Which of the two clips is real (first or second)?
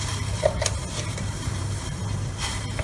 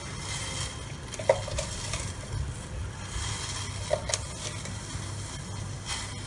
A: second